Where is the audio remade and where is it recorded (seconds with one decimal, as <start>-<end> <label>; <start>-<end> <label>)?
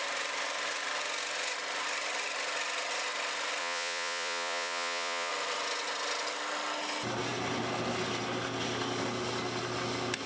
0.0-3.6 recorded; 3.6-5.3 remade; 5.3-10.3 recorded